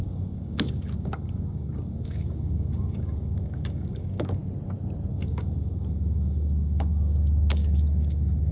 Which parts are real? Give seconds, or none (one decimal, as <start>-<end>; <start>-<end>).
4.4-5.1